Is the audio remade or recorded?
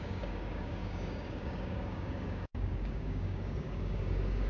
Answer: remade